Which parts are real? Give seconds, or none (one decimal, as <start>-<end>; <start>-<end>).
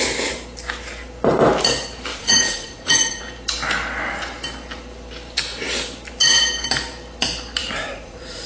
0.0-2.1; 3.2-7.6